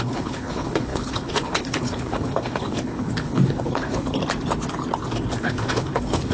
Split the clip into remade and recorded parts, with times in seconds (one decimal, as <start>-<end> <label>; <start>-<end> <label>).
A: 0.0-4.2 remade; 4.2-5.4 recorded; 5.4-6.3 remade